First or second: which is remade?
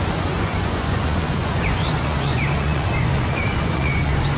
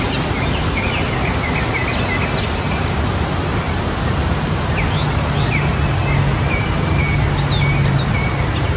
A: first